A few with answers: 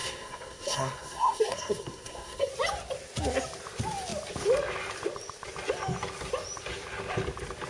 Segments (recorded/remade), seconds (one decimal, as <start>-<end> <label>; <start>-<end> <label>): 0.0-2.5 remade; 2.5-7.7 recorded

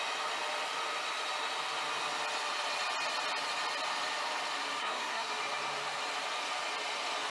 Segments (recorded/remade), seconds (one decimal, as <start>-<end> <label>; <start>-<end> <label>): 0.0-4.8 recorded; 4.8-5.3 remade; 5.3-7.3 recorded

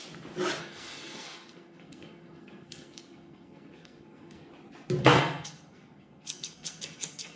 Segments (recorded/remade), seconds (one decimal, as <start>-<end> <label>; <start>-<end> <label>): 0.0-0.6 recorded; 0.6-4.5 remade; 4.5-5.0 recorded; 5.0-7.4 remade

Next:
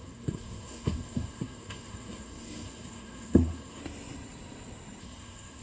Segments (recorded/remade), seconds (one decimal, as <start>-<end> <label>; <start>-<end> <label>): 0.0-3.8 remade; 3.8-5.0 recorded; 5.0-5.6 remade

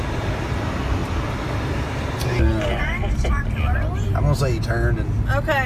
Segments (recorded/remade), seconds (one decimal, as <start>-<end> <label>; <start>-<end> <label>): 0.0-5.7 recorded

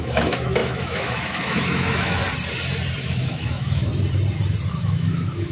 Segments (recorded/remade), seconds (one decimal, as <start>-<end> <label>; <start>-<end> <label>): 0.0-2.2 remade; 2.2-3.0 recorded; 3.0-3.9 remade; 3.9-4.7 recorded; 4.7-5.5 remade

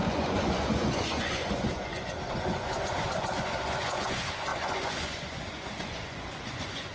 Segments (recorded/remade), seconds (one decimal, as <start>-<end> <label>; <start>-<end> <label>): 0.0-6.9 remade